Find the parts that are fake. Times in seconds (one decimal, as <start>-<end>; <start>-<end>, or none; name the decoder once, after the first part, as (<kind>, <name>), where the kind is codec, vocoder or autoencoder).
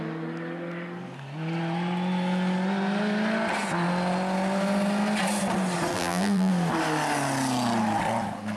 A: 5.9-6.5 (vocoder, BigVGAN v2)